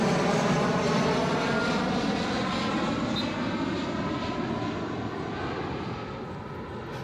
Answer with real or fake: real